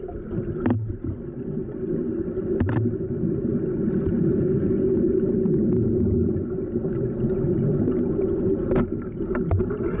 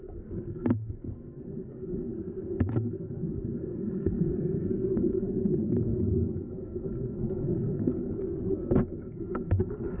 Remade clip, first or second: second